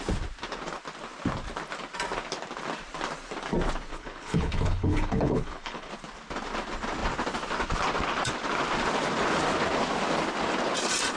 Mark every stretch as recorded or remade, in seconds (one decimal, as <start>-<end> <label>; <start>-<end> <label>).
0.0-3.9 recorded; 3.9-5.9 remade; 5.9-11.2 recorded